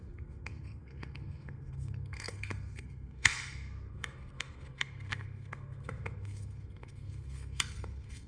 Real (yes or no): no